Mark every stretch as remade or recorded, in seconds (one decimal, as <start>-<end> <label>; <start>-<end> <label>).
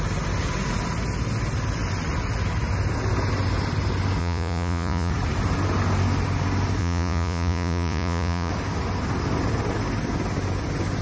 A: 0.0-4.2 recorded; 4.2-5.1 remade; 5.1-6.8 recorded; 6.8-8.5 remade; 8.5-11.0 recorded